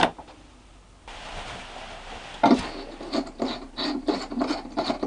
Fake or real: real